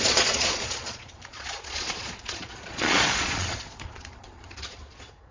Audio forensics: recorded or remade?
remade